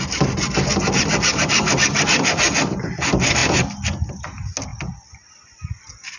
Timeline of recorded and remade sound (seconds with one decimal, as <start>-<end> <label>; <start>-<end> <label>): 0.0-3.4 recorded; 3.4-4.1 remade; 4.1-4.7 recorded; 4.7-5.3 remade; 5.3-6.2 recorded